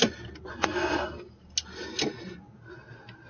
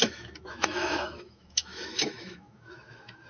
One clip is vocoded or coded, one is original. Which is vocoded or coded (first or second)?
second